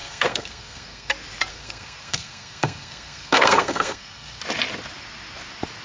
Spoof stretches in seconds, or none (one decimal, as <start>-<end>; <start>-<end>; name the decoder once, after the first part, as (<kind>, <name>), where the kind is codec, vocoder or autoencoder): 0.0-1.1 (codec, SNAC); 1.5-4.4